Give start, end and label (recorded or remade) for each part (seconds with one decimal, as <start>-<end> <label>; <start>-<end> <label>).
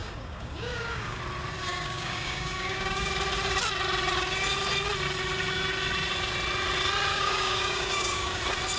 0.0-1.2 remade; 1.2-1.7 recorded; 1.7-3.1 remade; 3.1-7.1 recorded; 7.1-8.4 remade; 8.4-8.8 recorded